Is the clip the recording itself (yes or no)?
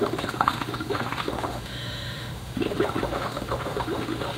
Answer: no